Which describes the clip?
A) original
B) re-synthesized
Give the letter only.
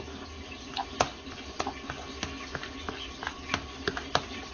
A